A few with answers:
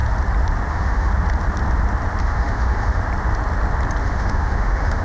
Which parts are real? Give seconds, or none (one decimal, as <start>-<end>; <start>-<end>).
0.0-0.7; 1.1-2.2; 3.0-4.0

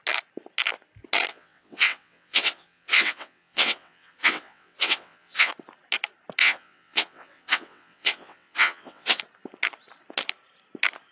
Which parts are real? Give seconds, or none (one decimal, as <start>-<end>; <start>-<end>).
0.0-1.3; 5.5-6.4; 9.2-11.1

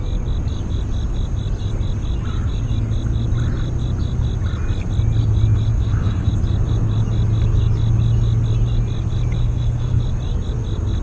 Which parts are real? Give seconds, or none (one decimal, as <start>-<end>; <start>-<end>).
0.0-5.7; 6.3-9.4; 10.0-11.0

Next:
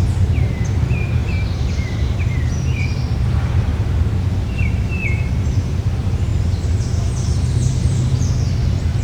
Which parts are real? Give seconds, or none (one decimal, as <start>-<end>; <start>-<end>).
3.7-4.4

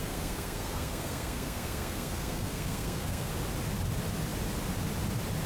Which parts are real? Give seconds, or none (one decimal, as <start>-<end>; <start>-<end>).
3.3-5.5

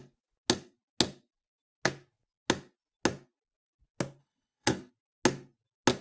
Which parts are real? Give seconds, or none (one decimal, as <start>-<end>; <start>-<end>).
0.0-4.2; 4.9-6.0

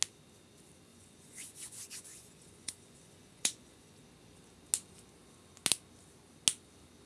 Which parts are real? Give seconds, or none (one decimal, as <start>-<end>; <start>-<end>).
0.0-0.9; 4.0-7.1